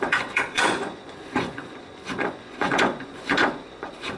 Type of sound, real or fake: fake